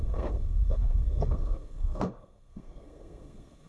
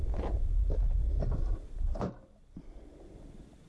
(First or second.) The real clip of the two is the second